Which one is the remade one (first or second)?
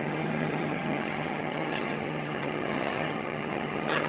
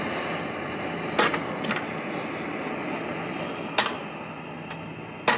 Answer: first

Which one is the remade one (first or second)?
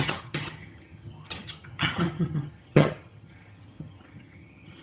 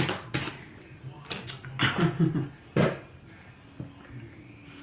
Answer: first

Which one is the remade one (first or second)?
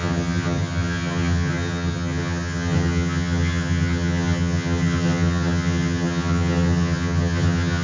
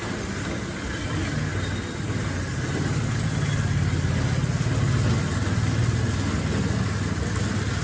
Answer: first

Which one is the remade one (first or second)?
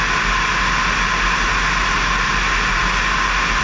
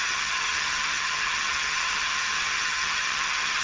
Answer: second